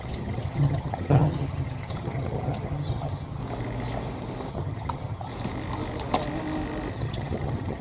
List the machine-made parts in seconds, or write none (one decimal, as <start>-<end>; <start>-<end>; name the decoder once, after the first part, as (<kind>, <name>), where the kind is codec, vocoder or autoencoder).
0.0-3.4 (vocoder, HiFi-GAN); 4.5-5.3; 6.9-7.8